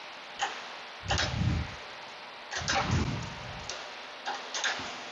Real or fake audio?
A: real